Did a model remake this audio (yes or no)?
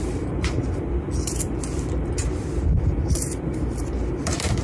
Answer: yes